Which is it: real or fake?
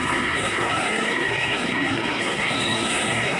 fake